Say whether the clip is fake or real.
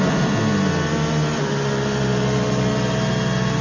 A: real